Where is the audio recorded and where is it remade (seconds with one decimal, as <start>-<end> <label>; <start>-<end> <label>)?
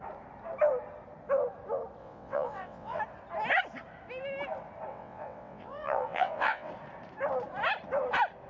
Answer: 0.0-2.0 recorded; 2.0-3.0 remade; 3.0-4.9 recorded; 4.9-6.7 remade; 6.7-8.5 recorded